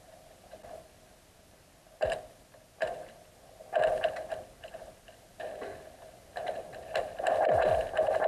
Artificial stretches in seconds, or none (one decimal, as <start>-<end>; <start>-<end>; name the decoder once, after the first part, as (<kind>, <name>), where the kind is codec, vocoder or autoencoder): none